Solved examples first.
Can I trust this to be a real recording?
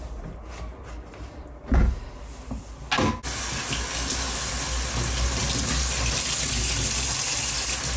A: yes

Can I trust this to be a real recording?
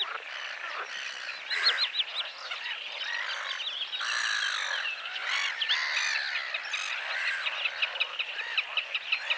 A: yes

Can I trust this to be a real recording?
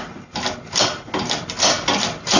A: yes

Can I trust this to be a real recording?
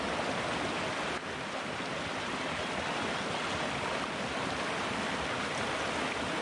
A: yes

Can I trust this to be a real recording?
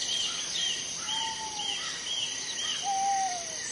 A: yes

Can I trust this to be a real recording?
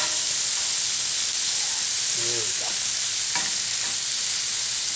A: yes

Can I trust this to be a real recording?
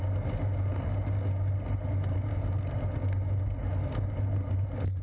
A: yes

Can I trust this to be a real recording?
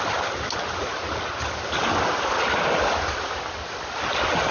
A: yes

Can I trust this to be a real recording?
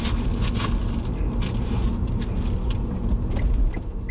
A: yes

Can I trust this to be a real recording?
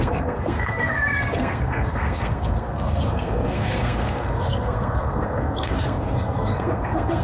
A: no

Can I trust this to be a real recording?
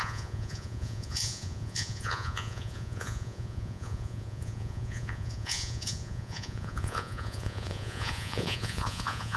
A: no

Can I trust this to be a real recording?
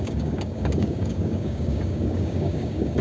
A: no